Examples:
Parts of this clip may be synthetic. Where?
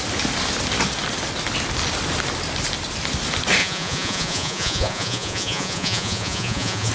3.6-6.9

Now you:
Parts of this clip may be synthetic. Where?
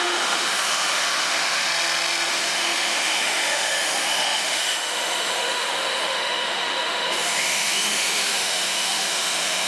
0.0-1.7; 2.3-9.7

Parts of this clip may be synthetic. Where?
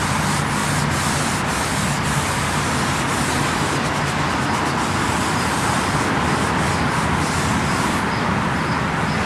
none